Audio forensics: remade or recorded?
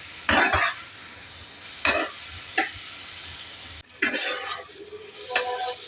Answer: recorded